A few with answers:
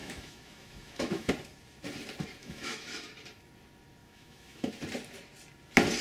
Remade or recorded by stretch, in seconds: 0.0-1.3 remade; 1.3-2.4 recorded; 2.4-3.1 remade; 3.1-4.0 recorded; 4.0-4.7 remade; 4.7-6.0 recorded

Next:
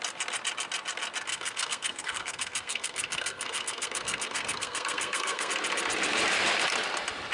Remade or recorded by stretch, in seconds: 0.0-1.3 recorded; 1.3-5.5 remade; 5.5-7.3 recorded